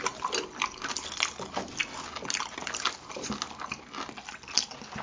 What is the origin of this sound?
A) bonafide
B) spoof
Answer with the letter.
A